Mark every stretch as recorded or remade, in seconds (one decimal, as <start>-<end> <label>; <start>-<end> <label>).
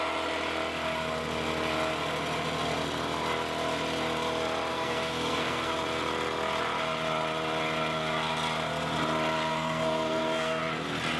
0.0-4.7 recorded; 4.7-5.7 remade; 5.7-9.5 recorded; 9.5-10.6 remade; 10.6-11.2 recorded